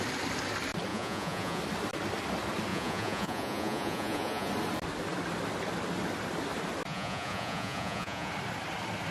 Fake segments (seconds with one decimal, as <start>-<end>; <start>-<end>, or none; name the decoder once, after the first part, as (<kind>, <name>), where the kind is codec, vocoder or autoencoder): 0.9-1.6 (vocoder, Vocos); 2.7-4.5; 6.9-8.3